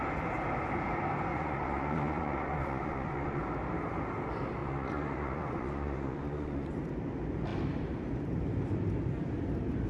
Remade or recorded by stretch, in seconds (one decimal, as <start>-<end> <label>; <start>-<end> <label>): 0.0-1.3 recorded; 1.3-3.4 remade; 3.4-4.6 recorded; 4.6-6.7 remade; 6.7-9.9 recorded